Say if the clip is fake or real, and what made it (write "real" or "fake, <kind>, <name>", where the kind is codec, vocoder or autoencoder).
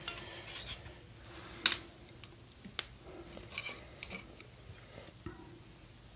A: real